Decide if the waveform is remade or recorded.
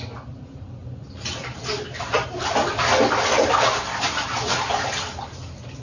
recorded